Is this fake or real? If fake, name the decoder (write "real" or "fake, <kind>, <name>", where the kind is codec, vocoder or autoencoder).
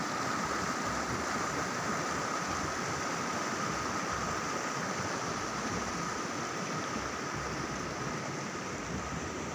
fake, vocoder, BigVGAN v2